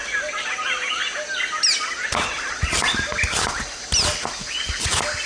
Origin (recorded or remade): recorded